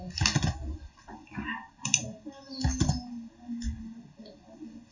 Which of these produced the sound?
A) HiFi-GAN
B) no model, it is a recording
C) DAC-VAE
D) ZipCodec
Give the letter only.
B